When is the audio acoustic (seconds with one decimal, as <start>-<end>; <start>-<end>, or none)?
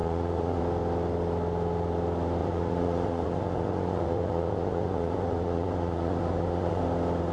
0.6-2.4; 6.8-7.3